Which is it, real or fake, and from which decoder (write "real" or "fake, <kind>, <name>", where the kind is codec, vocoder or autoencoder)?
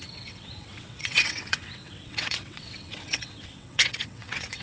fake, vocoder, WaveNeXt